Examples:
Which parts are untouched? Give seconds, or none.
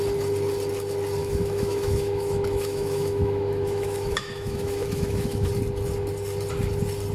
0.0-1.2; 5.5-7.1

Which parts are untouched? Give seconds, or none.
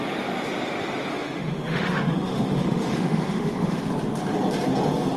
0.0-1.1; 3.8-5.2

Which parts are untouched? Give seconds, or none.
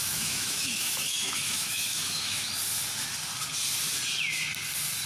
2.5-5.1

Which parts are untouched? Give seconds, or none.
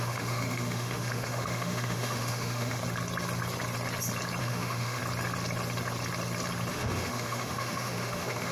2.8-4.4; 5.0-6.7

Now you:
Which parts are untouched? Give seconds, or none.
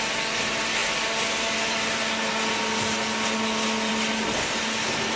0.0-5.2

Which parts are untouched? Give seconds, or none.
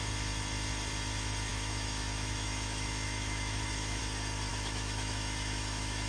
0.0-1.5; 4.0-4.5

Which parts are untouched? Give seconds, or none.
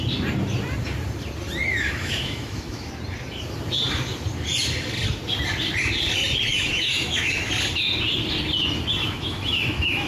0.0-1.7; 2.9-6.5; 7.5-9.0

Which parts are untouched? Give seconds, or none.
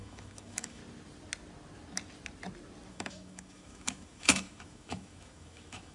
0.8-2.9